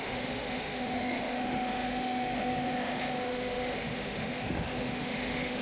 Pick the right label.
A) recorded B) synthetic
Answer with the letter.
B